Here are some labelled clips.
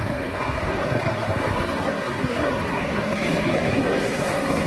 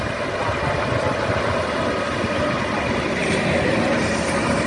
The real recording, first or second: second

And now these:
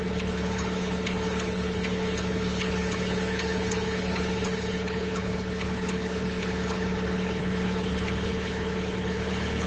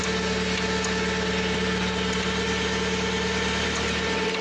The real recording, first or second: second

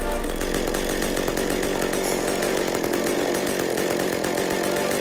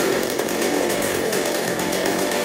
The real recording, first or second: first